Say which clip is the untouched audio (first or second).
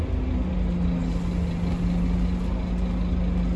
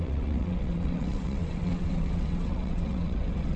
first